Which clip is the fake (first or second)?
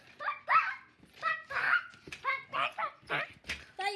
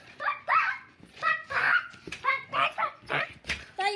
second